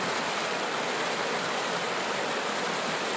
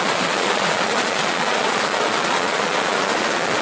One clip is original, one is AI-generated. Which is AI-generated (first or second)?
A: second